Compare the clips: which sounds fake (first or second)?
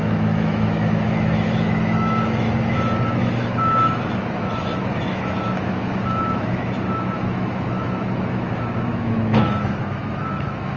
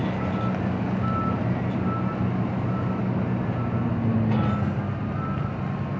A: first